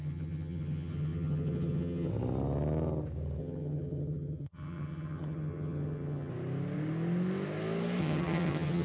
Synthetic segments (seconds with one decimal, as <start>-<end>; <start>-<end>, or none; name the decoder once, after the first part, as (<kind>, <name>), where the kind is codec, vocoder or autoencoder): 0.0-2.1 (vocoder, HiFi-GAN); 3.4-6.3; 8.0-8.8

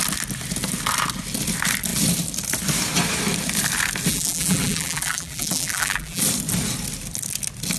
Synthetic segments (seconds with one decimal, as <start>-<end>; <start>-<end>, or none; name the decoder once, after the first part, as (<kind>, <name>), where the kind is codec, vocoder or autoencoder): 4.1-6.2 (vocoder, BigVGAN v2)

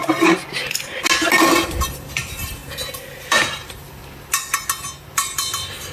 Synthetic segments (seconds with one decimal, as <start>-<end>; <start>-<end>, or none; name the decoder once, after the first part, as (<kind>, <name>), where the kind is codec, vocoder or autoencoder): 1.7-2.6 (vocoder, BigVGAN v2); 3.2-4.0; 5.0-5.9

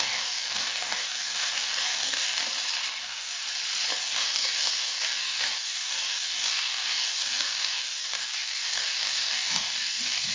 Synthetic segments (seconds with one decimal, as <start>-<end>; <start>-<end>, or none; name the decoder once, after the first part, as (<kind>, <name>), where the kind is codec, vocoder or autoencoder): 0.0-2.4 (codec, DAC); 3.0-3.4; 4.0-10.3

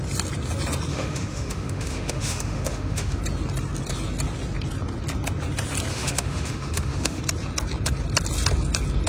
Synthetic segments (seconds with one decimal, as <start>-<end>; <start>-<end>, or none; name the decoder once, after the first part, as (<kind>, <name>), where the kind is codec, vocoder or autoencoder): 0.9-3.2 (autoencoder, DAC-VAE); 5.9-7.2

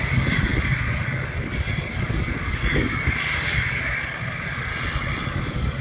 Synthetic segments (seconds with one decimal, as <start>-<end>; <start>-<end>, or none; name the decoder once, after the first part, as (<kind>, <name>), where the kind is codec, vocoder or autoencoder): 0.0-4.7 (codec, DAC); 5.3-5.8